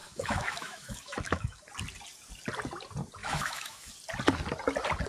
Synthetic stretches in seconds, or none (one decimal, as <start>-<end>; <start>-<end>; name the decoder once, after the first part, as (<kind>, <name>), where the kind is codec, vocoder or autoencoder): 0.0-1.6 (autoencoder, DAC-VAE); 3.2-3.9